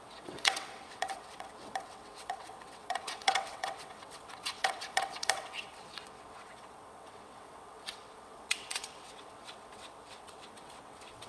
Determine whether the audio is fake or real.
fake